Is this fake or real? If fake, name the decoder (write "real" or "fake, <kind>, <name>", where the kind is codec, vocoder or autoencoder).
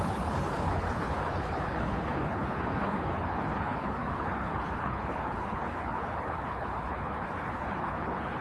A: fake, codec, HILCodec